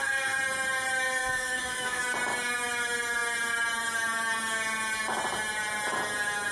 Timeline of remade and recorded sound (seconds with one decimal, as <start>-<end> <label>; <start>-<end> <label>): 0.0-1.2 recorded; 1.2-2.0 remade; 2.0-6.5 recorded